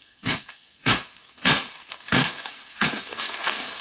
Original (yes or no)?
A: no